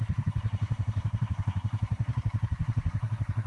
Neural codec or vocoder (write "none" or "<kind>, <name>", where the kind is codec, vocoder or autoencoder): codec, SNAC